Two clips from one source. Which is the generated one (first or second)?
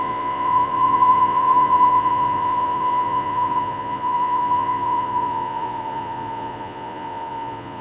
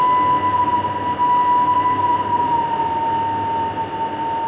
first